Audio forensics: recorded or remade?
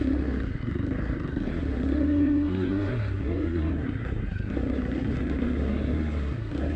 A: remade